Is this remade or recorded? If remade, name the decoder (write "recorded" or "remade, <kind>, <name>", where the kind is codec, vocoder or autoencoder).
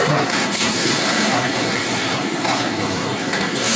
remade, codec, SNAC